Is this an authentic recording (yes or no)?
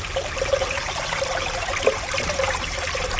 no